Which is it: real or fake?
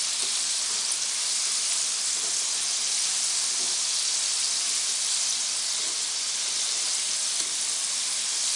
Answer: real